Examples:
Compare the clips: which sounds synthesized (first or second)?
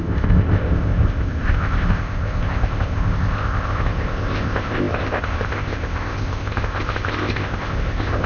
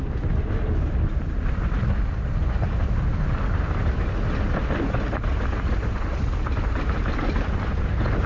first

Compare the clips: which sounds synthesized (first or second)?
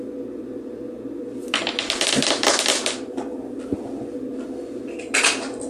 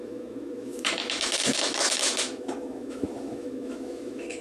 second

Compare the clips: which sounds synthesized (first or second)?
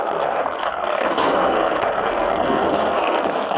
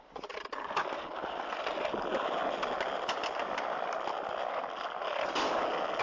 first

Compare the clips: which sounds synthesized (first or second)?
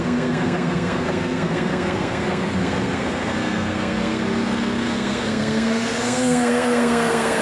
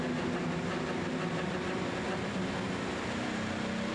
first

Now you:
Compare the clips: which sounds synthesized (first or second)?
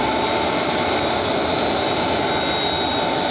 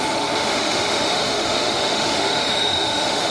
second